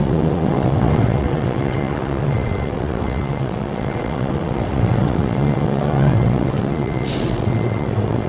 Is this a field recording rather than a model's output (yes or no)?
no